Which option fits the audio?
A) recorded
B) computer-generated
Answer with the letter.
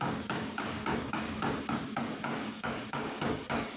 B